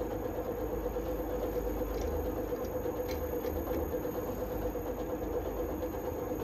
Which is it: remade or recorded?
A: recorded